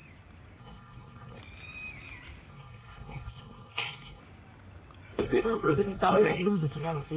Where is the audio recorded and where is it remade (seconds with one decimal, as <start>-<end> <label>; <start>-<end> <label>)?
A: 0.0-0.6 recorded; 0.6-1.4 remade; 1.4-2.5 recorded; 2.5-4.2 remade; 4.2-5.2 recorded; 5.2-7.2 remade